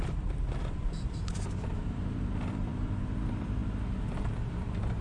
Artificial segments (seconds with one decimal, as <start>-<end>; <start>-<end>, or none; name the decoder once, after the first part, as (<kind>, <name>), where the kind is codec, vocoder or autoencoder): 0.0-5.0 (vocoder, BigVGAN v2)